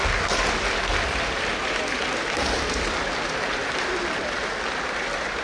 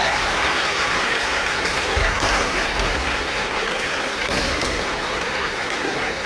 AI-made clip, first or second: second